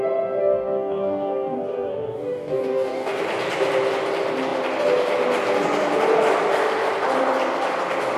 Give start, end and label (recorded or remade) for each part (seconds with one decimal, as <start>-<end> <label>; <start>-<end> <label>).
0.0-0.4 recorded; 0.4-3.2 remade; 3.2-8.2 recorded